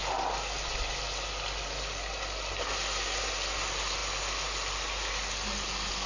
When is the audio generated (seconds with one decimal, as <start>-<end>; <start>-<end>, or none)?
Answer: none